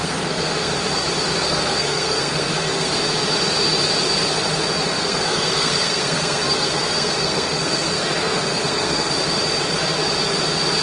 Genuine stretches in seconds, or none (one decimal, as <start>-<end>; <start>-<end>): 0.7-1.4; 3.0-5.0; 9.1-10.8